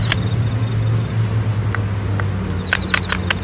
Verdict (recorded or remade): recorded